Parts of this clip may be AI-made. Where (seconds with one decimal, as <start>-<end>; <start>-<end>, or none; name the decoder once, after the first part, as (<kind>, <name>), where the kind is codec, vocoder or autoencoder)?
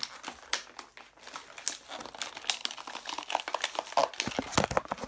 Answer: none